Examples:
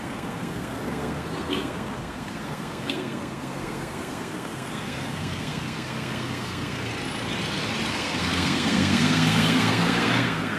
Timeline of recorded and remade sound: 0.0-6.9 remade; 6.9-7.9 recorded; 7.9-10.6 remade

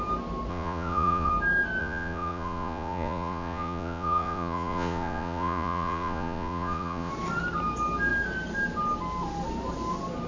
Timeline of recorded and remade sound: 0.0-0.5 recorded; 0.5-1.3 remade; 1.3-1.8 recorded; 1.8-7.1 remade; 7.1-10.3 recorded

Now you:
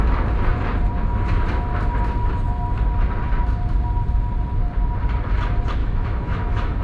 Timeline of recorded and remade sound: 0.0-5.8 recorded; 5.8-6.8 remade